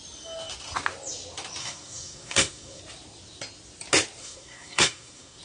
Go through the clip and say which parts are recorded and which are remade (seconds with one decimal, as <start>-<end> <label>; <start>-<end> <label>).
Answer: 0.0-1.6 recorded; 1.6-2.8 remade; 2.8-4.2 recorded; 4.2-5.4 remade